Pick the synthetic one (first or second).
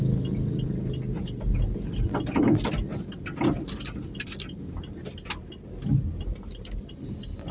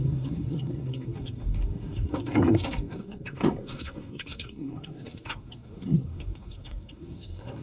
second